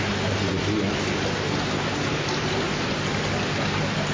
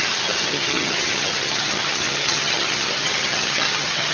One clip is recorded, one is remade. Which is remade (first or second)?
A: second